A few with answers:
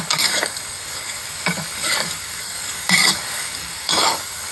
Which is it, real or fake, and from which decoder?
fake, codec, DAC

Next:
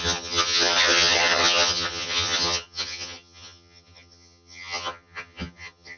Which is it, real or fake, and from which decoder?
fake, vocoder, HiFi-GAN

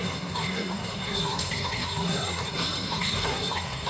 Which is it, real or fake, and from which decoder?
fake, codec, SNAC